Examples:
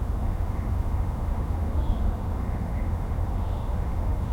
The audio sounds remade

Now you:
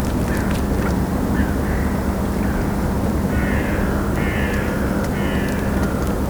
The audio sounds recorded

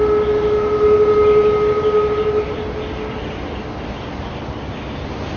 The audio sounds recorded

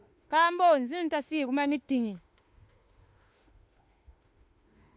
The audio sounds remade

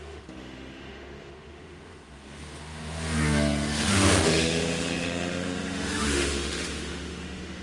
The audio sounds remade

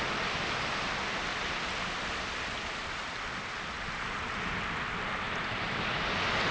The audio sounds recorded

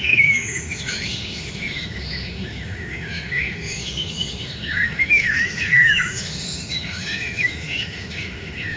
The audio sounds remade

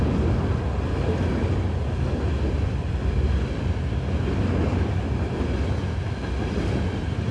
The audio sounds recorded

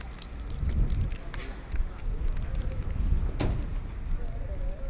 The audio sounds recorded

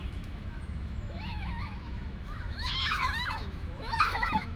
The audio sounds remade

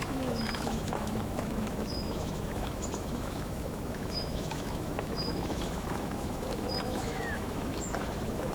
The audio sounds remade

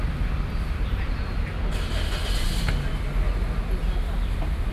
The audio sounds recorded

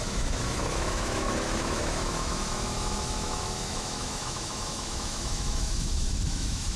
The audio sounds remade